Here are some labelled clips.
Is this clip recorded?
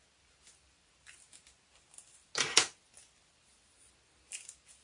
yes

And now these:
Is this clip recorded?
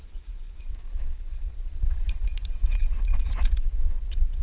no